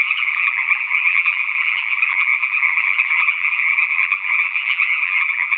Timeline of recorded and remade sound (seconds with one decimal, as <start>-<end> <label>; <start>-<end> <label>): 0.0-5.6 remade